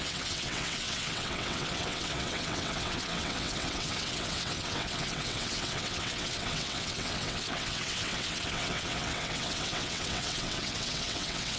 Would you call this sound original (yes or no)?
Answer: no